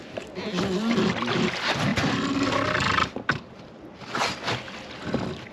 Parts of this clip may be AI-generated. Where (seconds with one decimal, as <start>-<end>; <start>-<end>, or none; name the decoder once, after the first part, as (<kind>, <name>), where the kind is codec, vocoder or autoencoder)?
none